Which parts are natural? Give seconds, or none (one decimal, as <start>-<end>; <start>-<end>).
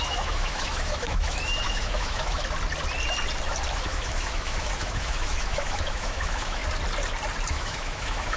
2.4-3.7; 6.6-7.5